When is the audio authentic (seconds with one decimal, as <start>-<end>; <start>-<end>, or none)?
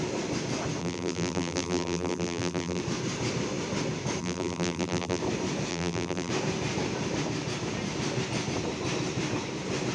0.0-0.8; 2.8-4.2; 5.2-5.7; 6.3-9.9